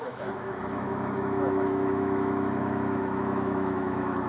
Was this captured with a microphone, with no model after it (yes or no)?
no